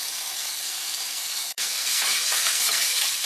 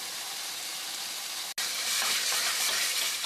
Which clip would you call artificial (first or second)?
first